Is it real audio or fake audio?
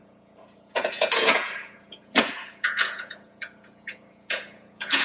fake